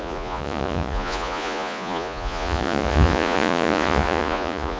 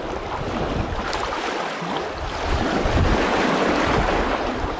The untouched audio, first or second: second